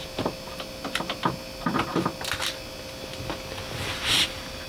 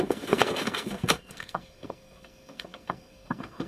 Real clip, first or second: first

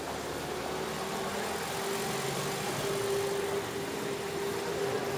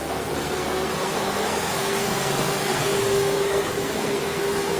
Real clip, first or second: first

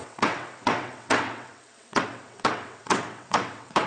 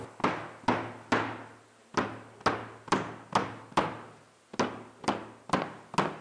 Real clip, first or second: second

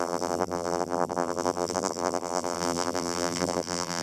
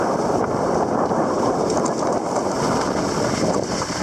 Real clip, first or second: second